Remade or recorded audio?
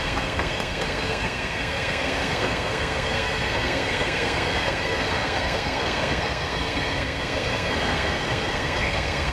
remade